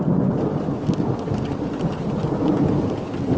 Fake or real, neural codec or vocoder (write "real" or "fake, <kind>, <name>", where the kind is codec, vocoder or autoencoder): real